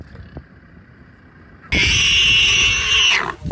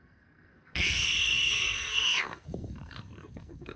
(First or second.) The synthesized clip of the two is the second